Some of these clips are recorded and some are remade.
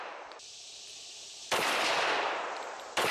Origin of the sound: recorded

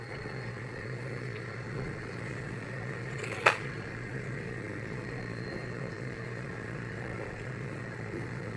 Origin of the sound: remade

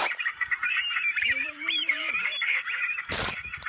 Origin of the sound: remade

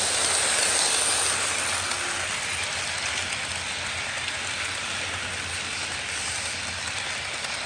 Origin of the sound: recorded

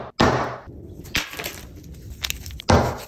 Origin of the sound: recorded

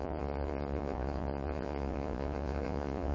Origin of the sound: remade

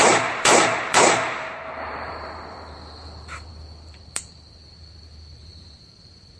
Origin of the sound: remade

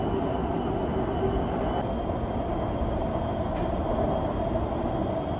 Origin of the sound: recorded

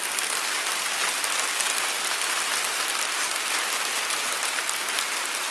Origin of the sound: recorded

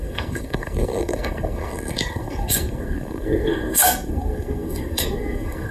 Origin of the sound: remade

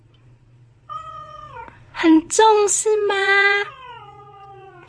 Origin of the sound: remade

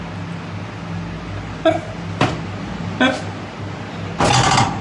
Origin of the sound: recorded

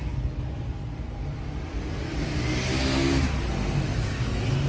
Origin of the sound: recorded